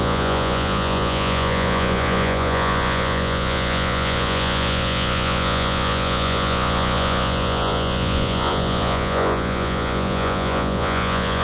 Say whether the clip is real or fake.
fake